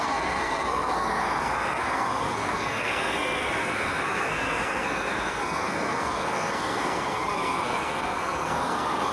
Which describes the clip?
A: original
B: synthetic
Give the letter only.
B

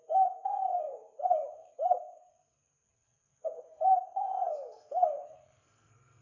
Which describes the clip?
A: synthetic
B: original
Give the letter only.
A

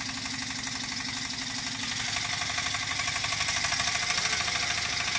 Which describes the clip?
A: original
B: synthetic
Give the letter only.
A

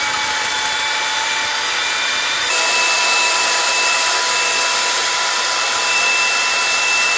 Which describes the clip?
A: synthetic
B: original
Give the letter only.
A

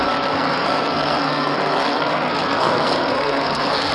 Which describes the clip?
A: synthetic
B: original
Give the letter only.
A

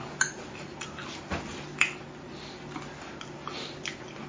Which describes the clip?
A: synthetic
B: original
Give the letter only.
B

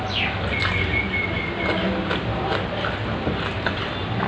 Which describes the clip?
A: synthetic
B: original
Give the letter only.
B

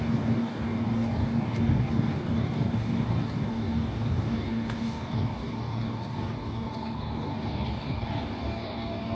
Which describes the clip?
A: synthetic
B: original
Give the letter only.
A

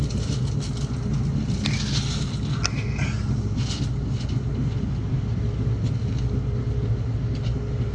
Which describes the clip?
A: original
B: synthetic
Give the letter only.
A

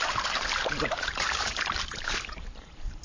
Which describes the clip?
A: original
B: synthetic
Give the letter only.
B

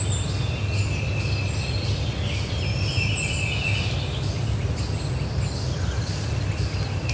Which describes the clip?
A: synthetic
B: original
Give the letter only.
B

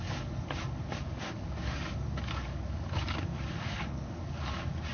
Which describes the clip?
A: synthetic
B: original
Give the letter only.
A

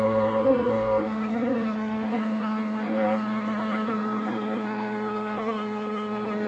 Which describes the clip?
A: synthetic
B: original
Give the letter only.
A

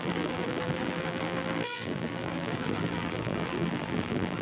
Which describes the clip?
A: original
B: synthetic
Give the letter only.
B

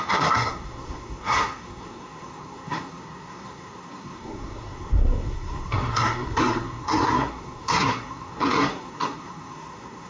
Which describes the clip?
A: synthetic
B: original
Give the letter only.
A